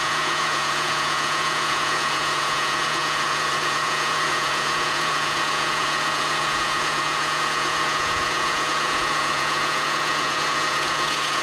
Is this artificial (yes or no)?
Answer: yes